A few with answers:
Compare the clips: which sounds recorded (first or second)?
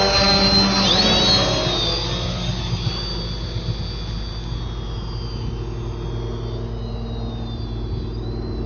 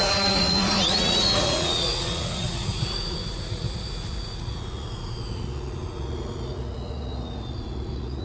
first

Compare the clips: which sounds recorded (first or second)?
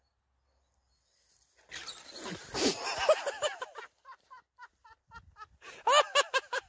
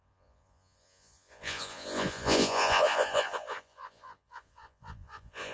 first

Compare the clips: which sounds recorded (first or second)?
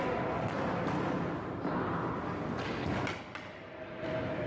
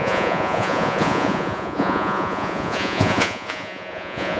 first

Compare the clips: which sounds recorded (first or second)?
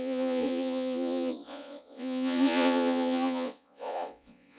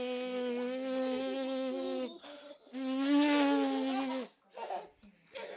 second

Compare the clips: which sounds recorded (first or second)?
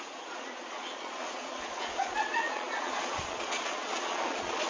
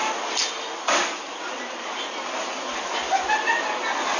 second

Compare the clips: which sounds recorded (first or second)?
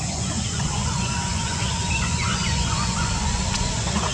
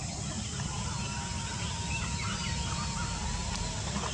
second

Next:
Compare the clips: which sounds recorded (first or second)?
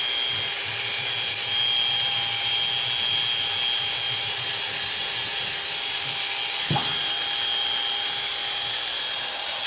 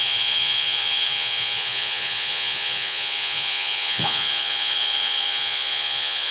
first